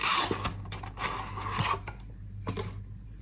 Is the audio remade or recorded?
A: recorded